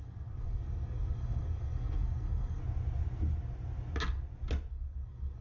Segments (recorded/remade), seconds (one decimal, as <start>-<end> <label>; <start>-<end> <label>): 0.0-2.6 remade; 2.6-4.7 recorded; 4.7-5.4 remade